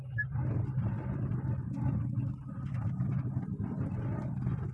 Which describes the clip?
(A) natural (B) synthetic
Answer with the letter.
A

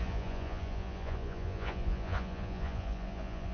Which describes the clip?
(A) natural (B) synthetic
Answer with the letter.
B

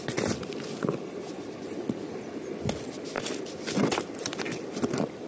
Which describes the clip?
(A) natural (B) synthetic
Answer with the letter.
A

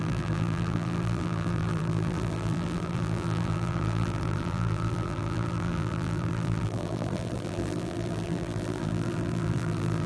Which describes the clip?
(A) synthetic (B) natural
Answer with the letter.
A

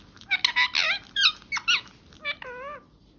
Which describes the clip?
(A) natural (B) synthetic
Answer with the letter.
A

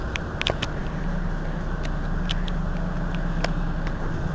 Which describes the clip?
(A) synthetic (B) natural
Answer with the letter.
B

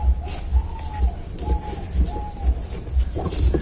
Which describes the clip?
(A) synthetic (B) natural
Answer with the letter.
B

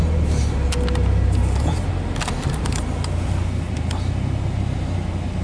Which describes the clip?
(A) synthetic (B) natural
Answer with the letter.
B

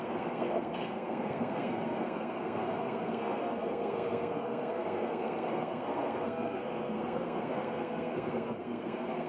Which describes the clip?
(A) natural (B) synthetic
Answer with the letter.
B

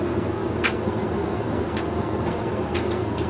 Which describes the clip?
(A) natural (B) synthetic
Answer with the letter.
B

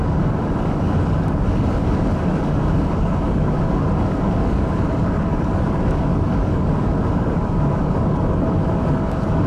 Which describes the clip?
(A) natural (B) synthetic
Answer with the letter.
B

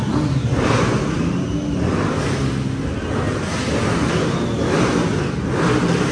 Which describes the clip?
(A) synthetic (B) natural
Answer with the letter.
B